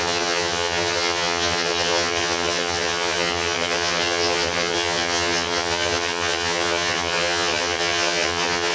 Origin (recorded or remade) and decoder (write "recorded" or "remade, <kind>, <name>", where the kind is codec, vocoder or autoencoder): remade, vocoder, HiFi-GAN